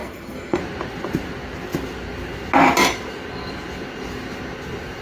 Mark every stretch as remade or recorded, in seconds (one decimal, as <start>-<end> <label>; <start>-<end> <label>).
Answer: 0.0-0.6 remade; 0.6-5.0 recorded